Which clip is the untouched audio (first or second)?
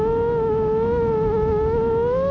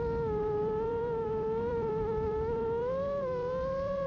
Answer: first